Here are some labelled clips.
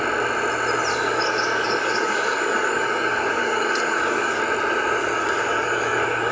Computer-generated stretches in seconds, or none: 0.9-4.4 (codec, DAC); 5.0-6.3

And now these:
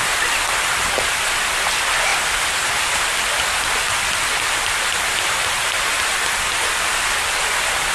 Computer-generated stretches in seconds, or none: none

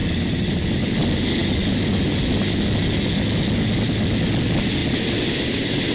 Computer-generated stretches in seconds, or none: none